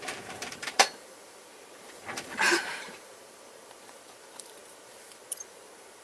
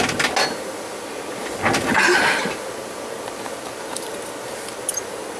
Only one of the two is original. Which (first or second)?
second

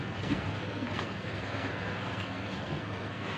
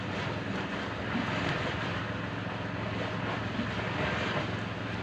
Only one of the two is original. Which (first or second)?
second